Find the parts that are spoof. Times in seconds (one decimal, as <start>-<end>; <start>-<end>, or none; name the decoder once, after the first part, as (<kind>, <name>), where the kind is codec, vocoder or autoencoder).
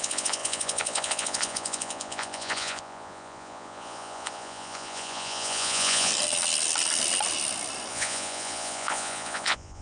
0.0-6.1 (vocoder, Vocos); 7.9-9.8